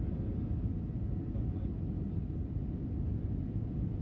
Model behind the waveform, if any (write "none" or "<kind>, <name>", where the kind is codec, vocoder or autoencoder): none